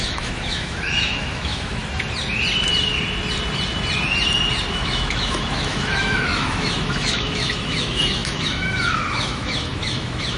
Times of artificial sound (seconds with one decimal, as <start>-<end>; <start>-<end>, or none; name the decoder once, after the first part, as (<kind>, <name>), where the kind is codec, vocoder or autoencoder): 0.0-1.8 (autoencoder, DAC-VAE); 4.7-10.4